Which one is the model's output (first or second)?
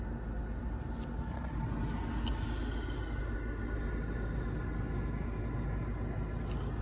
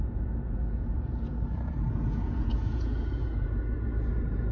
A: second